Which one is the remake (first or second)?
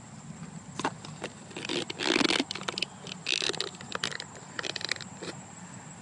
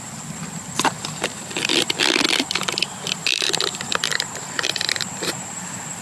second